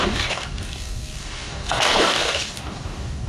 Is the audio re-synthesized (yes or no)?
yes